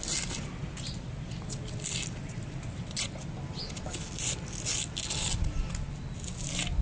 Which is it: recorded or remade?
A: recorded